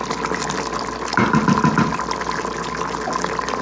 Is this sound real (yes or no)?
yes